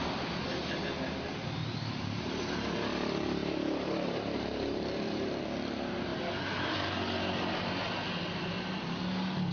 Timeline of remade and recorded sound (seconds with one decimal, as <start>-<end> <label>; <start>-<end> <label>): 0.0-1.6 recorded; 1.6-2.5 remade; 2.5-3.4 recorded; 3.4-5.3 remade; 5.3-9.5 recorded